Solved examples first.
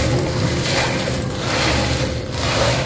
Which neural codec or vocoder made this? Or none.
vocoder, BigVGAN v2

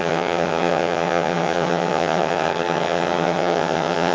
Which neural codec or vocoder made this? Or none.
vocoder, HiFi-GAN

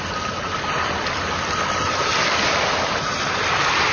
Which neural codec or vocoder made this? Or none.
none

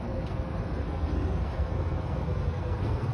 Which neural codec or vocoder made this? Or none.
codec, SNAC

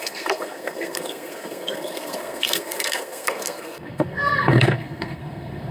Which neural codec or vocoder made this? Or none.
codec, SNAC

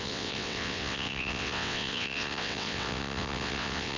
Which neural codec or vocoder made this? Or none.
vocoder, WaveNeXt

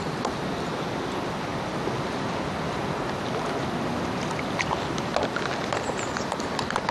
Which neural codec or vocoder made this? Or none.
none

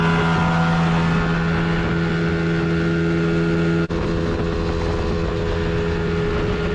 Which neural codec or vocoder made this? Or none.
none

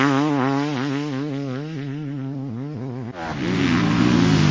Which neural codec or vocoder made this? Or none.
none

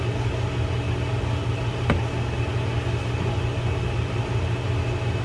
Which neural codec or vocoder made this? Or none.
none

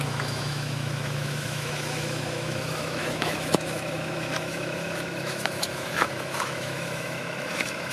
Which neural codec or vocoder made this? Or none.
autoencoder, DAC-VAE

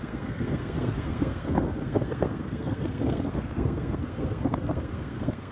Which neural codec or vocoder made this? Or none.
codec, SNAC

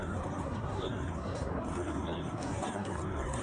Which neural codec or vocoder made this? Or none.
codec, SNAC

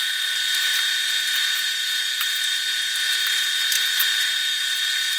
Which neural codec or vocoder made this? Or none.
none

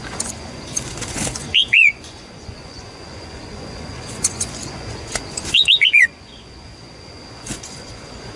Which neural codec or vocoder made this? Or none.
vocoder, Vocos